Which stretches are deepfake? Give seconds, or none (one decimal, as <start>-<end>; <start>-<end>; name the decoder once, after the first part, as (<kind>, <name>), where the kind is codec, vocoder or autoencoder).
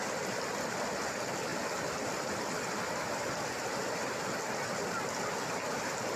none